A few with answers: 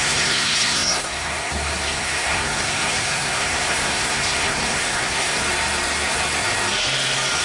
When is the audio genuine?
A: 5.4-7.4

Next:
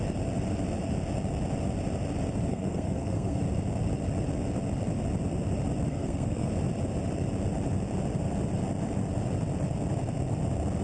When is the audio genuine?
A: 0.0-2.5; 3.4-5.9; 6.5-10.8